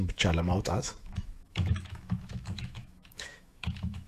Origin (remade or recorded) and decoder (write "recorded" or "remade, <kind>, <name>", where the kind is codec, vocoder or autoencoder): remade, autoencoder, DAC-VAE